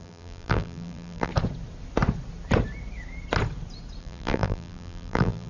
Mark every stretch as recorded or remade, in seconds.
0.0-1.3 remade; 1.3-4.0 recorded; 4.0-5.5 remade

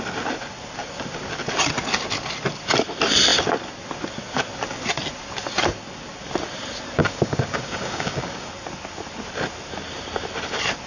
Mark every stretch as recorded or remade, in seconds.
0.0-7.0 recorded; 7.0-8.5 remade; 8.5-10.9 recorded

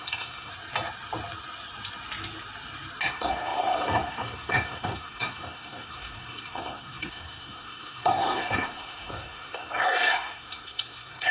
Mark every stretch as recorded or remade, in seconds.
0.0-0.5 remade; 0.5-3.1 recorded; 3.1-11.3 remade

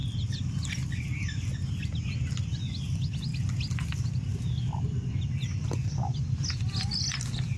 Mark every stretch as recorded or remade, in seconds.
0.0-7.6 recorded

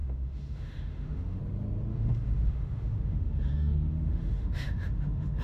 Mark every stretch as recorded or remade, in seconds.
0.0-1.4 remade; 1.4-1.9 recorded; 1.9-5.4 remade

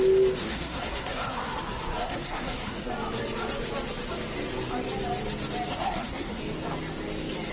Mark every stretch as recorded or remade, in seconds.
0.0-0.4 recorded; 0.4-1.6 remade; 1.6-2.0 recorded; 2.0-2.9 remade; 2.9-5.7 recorded; 5.7-6.4 remade; 6.4-7.5 recorded